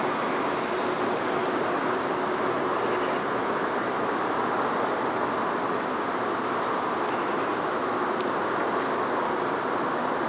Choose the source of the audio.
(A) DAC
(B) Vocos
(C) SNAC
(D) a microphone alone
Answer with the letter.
D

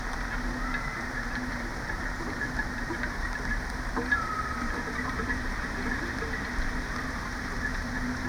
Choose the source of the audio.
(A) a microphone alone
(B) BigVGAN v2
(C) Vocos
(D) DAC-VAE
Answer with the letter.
B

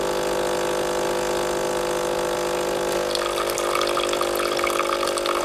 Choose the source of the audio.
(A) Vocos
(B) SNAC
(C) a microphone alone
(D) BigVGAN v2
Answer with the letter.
C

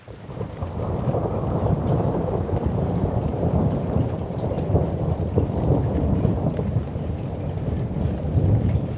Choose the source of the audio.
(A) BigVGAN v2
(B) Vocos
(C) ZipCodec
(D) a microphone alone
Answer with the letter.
A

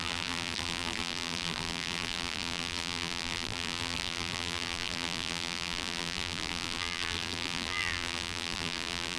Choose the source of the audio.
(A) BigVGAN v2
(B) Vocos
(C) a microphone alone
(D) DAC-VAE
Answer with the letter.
A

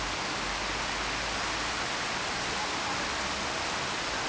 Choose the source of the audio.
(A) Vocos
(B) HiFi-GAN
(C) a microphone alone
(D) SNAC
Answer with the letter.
C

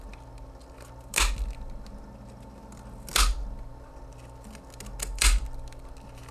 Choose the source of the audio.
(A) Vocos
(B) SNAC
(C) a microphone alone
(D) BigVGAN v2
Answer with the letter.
C